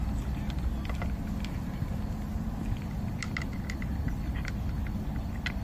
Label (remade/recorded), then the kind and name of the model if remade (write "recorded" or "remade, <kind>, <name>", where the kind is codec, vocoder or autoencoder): recorded